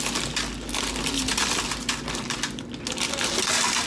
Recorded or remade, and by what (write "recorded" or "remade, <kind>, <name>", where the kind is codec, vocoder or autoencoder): recorded